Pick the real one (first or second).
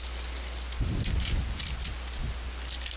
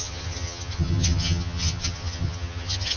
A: first